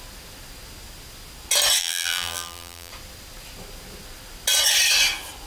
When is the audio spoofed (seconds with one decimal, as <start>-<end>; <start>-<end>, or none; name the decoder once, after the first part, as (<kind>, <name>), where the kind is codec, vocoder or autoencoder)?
1.8-2.9 (vocoder, BigVGAN v2)